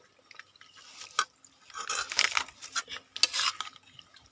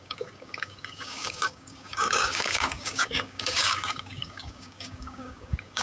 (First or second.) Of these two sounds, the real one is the first